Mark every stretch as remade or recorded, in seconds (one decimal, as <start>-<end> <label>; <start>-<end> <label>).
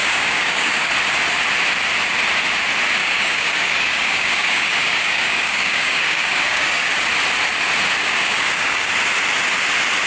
0.0-0.9 remade; 0.9-3.0 recorded; 3.0-6.9 remade; 6.9-8.0 recorded; 8.0-8.9 remade; 8.9-10.1 recorded